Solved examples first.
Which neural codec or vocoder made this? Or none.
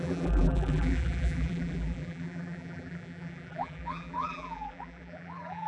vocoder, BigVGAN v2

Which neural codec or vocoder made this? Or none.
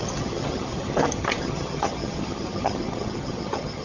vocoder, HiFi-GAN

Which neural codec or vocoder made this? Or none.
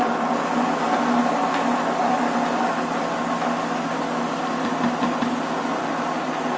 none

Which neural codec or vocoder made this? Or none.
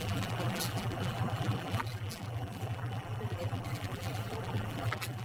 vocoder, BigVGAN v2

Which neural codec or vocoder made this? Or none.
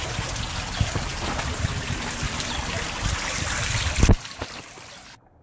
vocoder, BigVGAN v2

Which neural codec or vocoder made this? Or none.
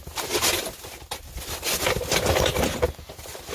none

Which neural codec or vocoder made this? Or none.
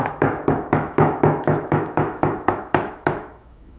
autoencoder, DAC-VAE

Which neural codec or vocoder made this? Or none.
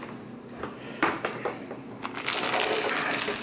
none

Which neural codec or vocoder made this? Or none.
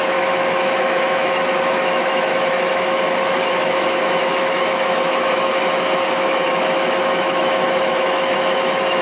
autoencoder, DAC-VAE